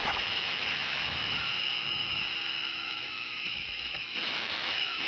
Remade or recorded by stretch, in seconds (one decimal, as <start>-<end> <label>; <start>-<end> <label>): 0.0-5.1 remade